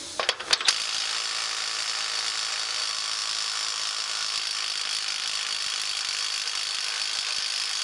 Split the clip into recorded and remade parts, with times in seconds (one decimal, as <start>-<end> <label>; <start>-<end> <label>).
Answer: 0.0-7.8 recorded